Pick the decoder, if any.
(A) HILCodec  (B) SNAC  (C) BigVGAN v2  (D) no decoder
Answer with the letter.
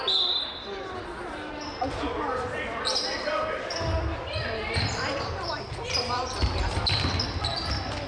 C